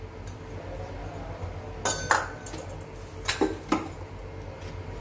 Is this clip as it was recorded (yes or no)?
yes